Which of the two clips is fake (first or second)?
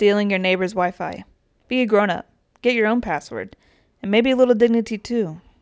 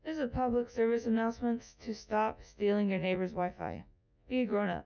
second